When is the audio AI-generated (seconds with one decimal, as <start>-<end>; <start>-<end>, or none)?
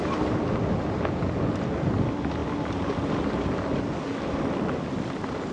none